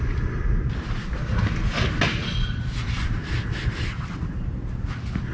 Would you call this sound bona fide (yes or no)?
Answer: yes